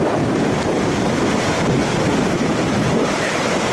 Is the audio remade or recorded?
recorded